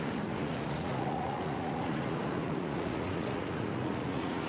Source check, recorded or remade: remade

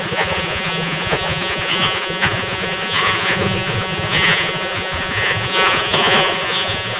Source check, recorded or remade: remade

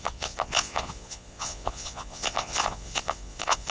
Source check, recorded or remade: remade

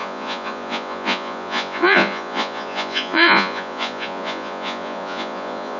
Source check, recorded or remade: remade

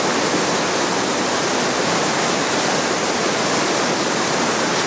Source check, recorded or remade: recorded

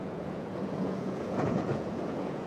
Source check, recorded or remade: remade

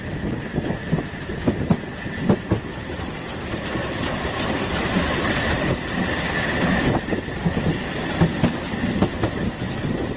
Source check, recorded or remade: recorded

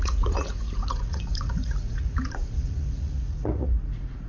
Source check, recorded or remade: remade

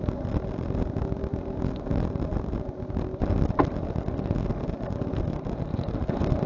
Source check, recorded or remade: recorded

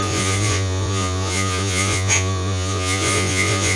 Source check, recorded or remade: remade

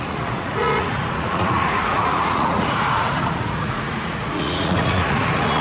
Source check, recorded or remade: remade